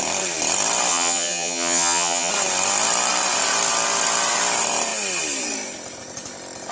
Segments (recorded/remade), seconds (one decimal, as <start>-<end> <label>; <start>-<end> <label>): 0.0-0.9 recorded; 0.9-2.3 remade; 2.3-6.7 recorded